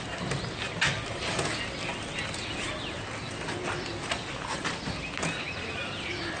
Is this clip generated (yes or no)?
no